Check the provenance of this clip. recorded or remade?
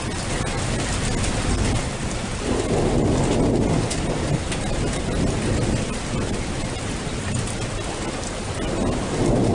recorded